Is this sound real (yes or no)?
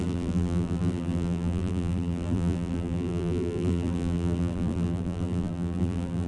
no